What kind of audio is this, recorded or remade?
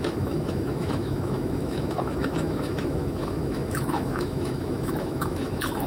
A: remade